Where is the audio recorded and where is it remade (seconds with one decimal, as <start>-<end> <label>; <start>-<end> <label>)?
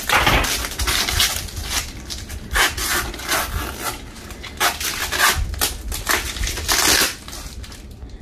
0.0-8.2 recorded